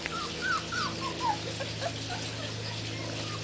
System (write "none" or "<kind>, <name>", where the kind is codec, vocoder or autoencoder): none